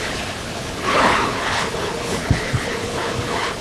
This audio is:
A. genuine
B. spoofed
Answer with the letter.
B